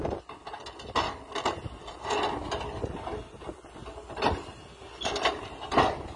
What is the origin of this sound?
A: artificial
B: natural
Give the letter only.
B